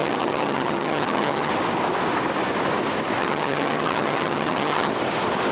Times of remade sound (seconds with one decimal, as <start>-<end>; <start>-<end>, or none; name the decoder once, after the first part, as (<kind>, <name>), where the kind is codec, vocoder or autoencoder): 0.0-1.5 (vocoder, HiFi-GAN); 3.2-4.9